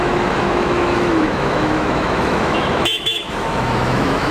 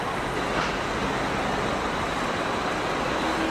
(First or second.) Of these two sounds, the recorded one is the second